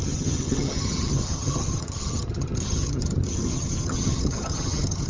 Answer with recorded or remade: remade